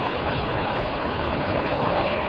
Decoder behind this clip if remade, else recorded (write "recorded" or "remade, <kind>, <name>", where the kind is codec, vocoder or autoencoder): remade, codec, HILCodec